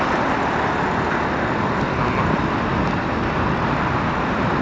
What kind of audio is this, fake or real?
real